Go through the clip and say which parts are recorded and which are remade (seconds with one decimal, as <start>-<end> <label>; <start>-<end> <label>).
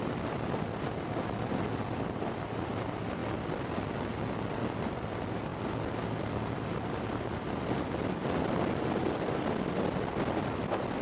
0.0-11.0 recorded